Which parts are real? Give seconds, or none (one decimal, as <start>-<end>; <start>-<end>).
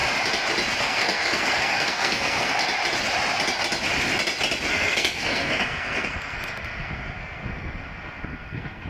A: 0.0-0.8; 2.6-4.7